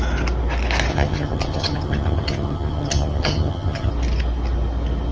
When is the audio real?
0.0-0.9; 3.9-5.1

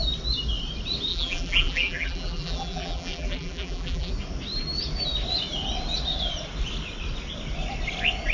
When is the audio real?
0.0-1.1; 4.1-8.3

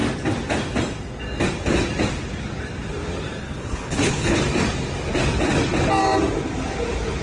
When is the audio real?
0.0-3.4; 4.4-7.2

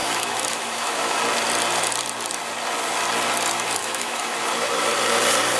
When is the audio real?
1.2-3.8; 4.9-5.6

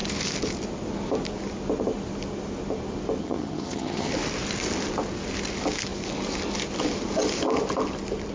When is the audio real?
0.0-3.2; 4.1-8.3

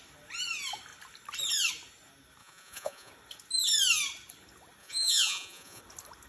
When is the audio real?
0.0-2.4; 3.1-4.8; 5.8-6.3

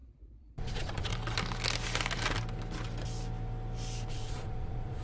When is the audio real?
1.1-4.1